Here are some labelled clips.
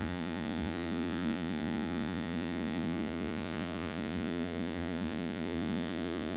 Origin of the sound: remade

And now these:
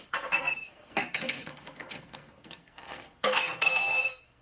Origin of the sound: remade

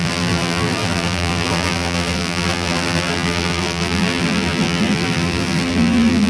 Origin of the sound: remade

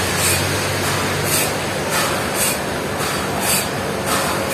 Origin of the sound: recorded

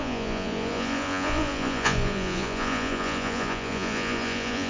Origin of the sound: remade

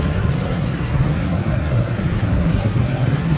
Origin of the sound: remade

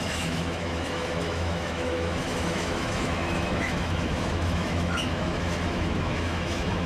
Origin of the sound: remade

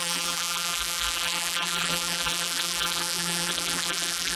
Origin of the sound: remade